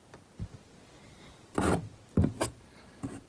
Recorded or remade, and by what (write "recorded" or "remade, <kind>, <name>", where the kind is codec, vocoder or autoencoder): recorded